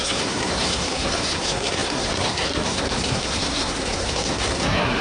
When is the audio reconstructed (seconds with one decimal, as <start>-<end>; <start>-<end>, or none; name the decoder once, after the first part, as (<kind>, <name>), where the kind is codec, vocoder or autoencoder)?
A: 0.0-5.0 (codec, SNAC)